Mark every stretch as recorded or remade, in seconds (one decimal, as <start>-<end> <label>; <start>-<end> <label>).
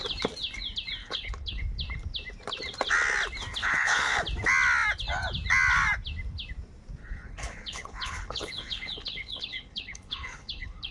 0.0-1.0 recorded; 1.0-1.6 remade; 1.6-3.6 recorded; 3.6-4.2 remade; 4.2-7.0 recorded; 7.0-10.9 remade